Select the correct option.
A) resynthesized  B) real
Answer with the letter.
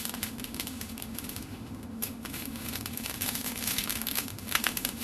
A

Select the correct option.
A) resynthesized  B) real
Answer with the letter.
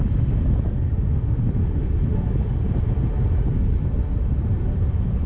B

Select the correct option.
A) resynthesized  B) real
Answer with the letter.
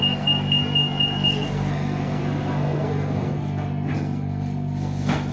A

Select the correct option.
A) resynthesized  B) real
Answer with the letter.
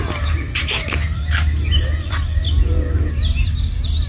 B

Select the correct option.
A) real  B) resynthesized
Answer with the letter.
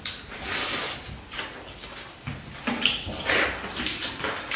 A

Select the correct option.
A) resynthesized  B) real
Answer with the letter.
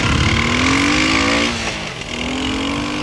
B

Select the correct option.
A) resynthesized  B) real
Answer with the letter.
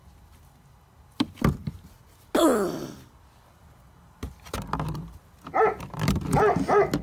B